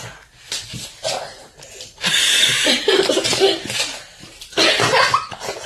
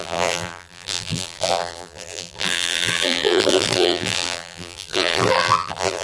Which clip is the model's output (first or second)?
second